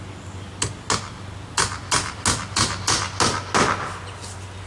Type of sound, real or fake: real